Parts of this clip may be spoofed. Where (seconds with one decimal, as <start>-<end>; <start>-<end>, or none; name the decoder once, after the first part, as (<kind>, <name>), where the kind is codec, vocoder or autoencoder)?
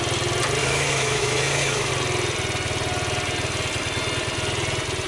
0.6-1.9 (autoencoder, DAC-VAE)